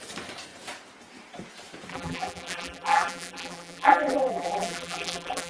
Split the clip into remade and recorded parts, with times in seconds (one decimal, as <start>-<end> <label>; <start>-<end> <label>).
0.0-1.9 recorded; 1.9-5.5 remade